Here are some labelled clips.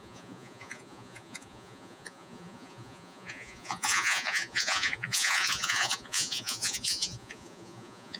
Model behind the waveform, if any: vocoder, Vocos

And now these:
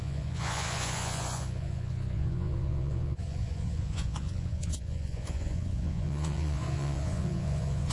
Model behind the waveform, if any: vocoder, Vocos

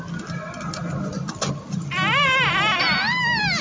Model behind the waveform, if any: none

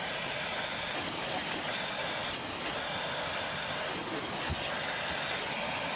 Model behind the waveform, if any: none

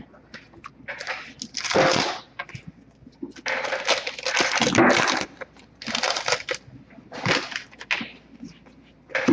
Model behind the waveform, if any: none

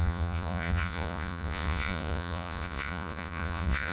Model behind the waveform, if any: vocoder, Vocos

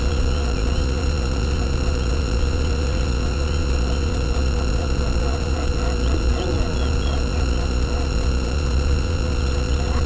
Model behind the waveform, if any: vocoder, Vocos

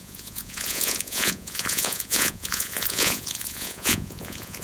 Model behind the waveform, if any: vocoder, Vocos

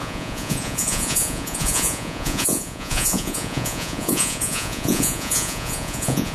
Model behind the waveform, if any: vocoder, Vocos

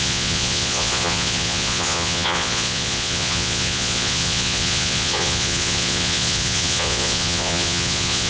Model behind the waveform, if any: vocoder, Vocos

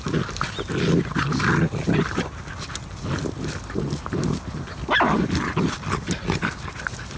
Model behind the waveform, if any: none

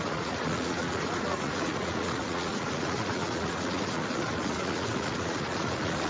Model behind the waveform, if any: vocoder, Vocos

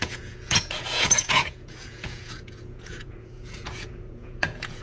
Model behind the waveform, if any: vocoder, Vocos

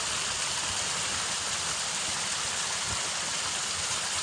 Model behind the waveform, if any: none